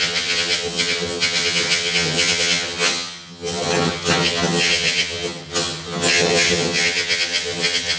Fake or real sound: fake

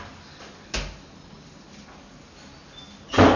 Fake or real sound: real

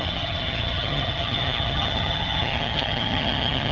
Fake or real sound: fake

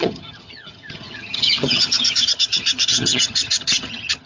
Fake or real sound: fake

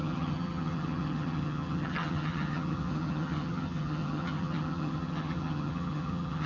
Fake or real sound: fake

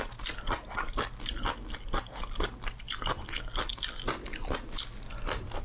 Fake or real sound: real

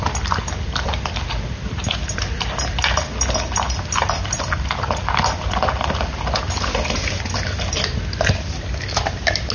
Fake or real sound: real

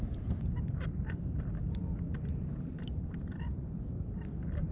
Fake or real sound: real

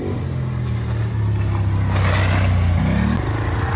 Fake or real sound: real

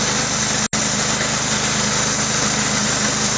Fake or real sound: real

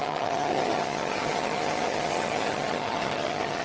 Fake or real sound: fake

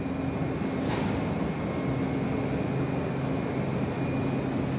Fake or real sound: real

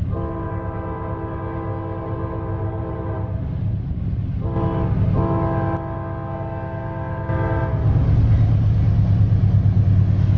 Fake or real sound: real